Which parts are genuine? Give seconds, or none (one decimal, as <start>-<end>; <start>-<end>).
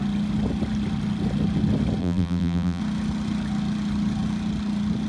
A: 0.0-2.0; 2.8-5.1